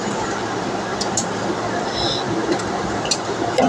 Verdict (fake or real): real